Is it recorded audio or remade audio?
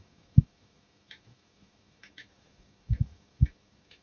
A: remade